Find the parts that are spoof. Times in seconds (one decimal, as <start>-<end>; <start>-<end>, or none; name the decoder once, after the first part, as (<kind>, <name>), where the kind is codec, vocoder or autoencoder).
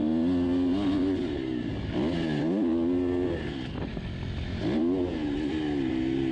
none